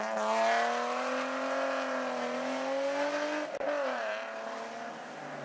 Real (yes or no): yes